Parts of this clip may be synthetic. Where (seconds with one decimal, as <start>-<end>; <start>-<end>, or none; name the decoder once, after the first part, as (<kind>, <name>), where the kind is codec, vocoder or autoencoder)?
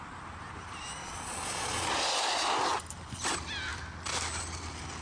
1.0-1.9 (vocoder, Vocos)